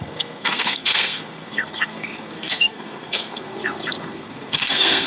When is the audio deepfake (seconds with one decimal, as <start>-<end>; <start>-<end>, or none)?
0.0-5.1